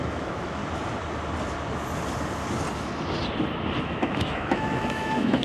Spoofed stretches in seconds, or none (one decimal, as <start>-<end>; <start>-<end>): 0.0-0.6; 3.8-5.4